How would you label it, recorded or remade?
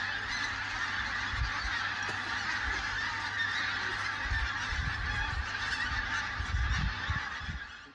recorded